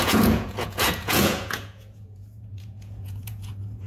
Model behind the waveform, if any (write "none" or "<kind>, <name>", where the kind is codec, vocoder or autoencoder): vocoder, Vocos